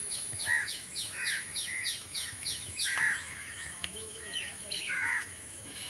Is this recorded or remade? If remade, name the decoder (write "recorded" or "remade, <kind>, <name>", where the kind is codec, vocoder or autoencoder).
remade, autoencoder, DAC-VAE